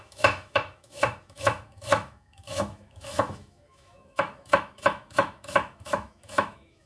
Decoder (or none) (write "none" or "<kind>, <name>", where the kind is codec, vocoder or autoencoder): autoencoder, DAC-VAE